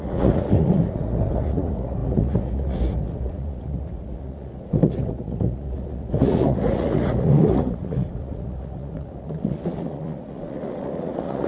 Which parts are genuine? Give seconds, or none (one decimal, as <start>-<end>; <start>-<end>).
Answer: none